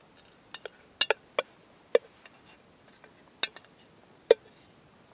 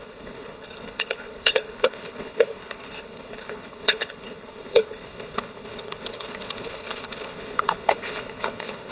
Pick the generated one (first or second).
second